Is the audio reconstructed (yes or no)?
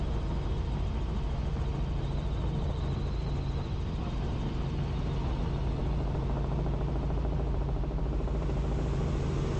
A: no